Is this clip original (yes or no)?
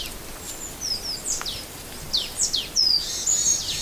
yes